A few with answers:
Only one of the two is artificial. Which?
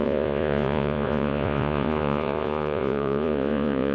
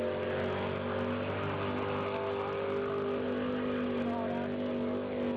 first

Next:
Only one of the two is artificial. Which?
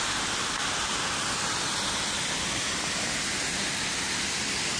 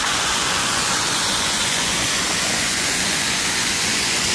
second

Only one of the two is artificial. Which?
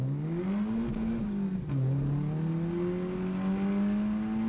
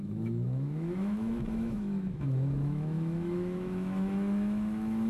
second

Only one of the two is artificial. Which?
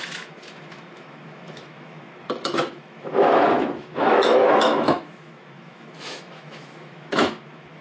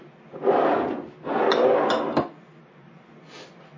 first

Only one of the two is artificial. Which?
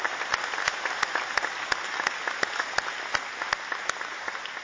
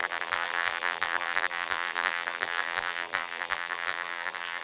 second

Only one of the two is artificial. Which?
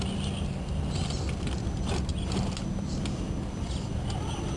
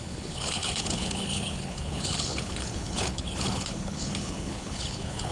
second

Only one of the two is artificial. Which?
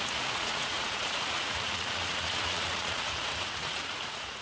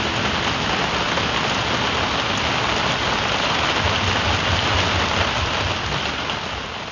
first